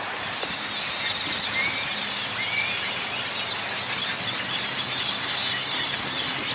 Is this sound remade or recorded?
recorded